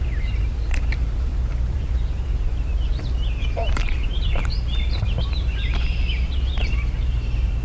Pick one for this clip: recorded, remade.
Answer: remade